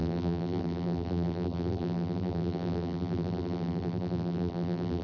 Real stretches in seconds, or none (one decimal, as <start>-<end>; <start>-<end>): none